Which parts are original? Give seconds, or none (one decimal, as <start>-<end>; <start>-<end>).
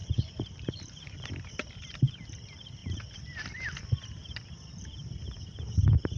1.3-2.8; 3.8-4.2; 5.2-6.2